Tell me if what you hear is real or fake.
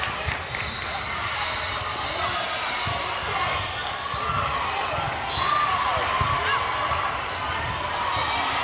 real